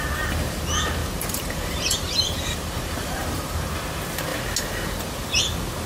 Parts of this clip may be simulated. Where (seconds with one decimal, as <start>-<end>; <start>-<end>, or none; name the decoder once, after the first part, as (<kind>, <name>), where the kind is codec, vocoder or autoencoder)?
1.0-3.7 (vocoder, BigVGAN v2)

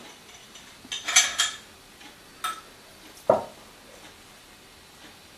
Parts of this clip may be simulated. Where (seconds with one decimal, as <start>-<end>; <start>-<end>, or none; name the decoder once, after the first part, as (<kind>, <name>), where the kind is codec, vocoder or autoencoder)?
2.9-3.4 (vocoder, BigVGAN v2)